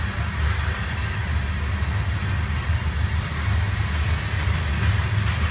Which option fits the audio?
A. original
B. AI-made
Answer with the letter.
A